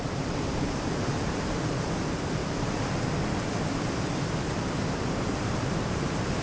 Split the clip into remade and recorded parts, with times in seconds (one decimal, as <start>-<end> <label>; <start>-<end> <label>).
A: 0.0-2.4 remade; 2.4-4.2 recorded; 4.2-6.4 remade